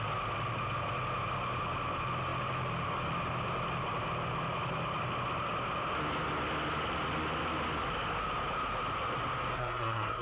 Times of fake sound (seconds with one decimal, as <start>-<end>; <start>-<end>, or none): 9.5-10.2